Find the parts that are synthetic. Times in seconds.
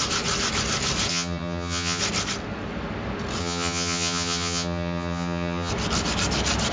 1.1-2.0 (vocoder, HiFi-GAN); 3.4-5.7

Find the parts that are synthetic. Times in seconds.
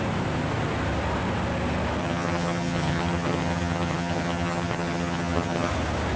2.0-5.7 (vocoder, HiFi-GAN)